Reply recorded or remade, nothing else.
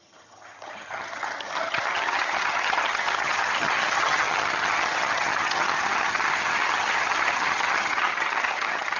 remade